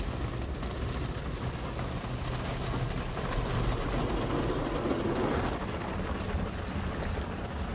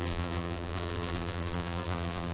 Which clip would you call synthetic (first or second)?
second